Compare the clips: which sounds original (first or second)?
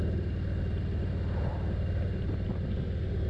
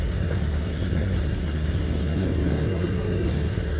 first